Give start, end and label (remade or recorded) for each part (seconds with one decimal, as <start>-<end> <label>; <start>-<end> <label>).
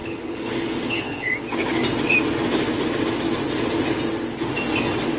0.0-1.3 remade; 1.3-5.2 recorded